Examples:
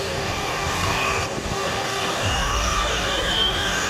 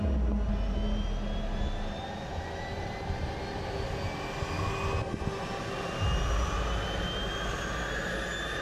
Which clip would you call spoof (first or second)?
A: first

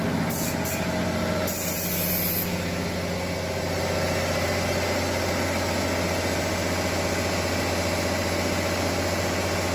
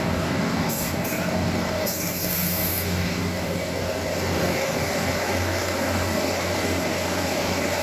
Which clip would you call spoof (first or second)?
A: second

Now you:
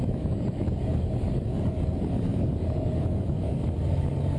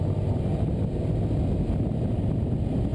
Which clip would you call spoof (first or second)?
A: first